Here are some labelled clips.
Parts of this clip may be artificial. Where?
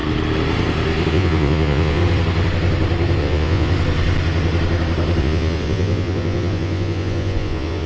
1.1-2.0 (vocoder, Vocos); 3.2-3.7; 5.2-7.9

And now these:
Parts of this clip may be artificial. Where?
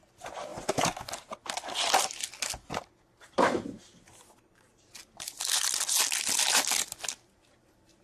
none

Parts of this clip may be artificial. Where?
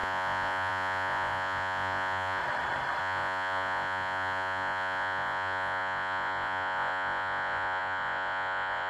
0.0-2.4 (vocoder, Vocos); 3.0-8.9